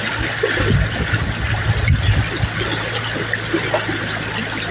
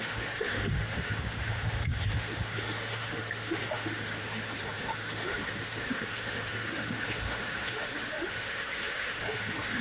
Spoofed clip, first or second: second